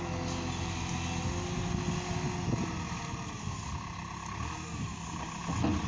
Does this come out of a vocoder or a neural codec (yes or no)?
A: no